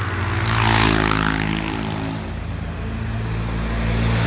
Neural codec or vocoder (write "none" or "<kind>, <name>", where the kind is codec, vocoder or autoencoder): none